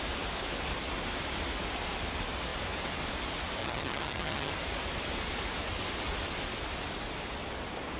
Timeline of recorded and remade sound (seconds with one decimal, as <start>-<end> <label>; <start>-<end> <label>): 0.0-3.6 recorded; 3.6-4.5 remade; 4.5-8.0 recorded